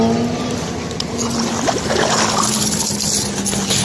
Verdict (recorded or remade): recorded